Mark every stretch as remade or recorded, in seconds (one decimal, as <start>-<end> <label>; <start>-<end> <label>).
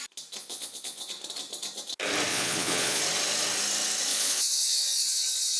0.0-0.4 recorded; 0.4-1.1 remade; 1.1-2.3 recorded; 2.3-3.0 remade; 3.0-4.1 recorded; 4.1-5.6 remade